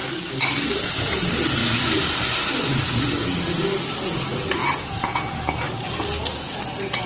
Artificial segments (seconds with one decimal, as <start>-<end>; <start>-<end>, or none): 4.6-5.3